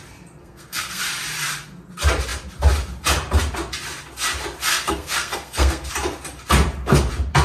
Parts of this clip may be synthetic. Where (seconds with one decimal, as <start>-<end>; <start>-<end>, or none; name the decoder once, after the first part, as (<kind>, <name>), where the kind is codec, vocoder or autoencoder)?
0.4-1.0 (codec, SNAC); 4.7-5.9